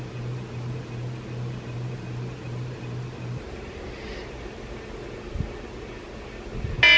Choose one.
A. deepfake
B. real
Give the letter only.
B